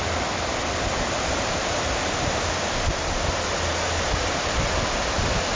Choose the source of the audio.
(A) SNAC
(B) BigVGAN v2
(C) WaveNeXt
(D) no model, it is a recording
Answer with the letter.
D